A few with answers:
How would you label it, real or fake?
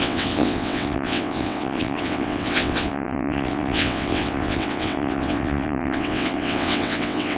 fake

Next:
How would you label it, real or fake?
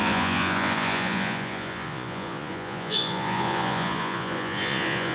fake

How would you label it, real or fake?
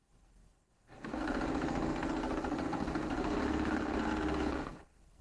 fake